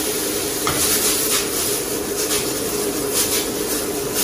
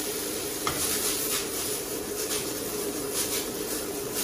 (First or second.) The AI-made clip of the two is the second